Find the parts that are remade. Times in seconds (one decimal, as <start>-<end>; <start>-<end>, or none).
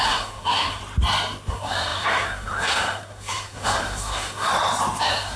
0.0-0.8; 1.5-4.5; 5.0-5.4